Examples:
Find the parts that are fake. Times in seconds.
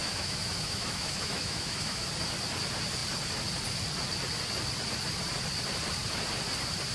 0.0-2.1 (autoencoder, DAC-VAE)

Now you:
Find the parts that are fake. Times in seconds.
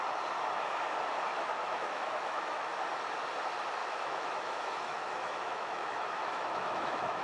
1.3-2.7 (autoencoder, DAC-VAE); 3.8-7.2